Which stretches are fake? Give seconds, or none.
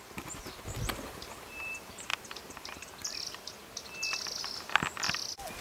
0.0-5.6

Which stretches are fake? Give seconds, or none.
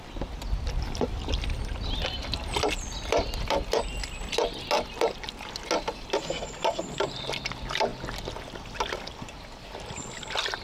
none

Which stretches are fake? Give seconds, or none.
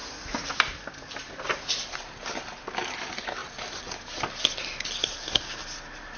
none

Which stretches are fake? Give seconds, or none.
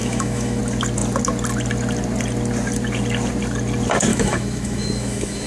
0.0-0.6; 4.1-5.5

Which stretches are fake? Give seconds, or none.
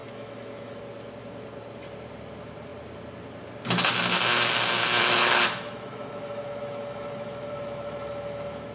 0.0-0.8; 5.0-8.7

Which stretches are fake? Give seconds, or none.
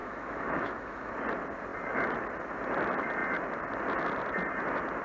0.0-1.1